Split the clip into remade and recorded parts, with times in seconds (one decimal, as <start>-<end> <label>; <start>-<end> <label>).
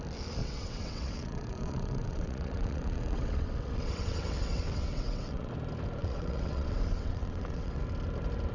0.0-0.4 recorded; 0.4-5.5 remade; 5.5-6.0 recorded; 6.0-7.8 remade; 7.8-8.5 recorded